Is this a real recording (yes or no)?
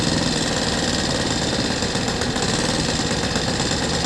yes